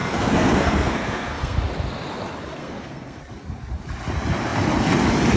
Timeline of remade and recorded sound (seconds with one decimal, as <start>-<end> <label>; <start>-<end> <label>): 0.0-1.6 remade; 1.6-2.6 recorded; 2.6-3.2 remade; 3.2-5.4 recorded